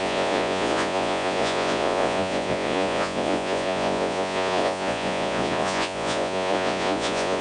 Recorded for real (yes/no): no